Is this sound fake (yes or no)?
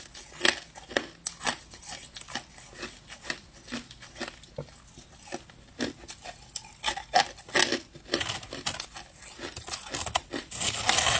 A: no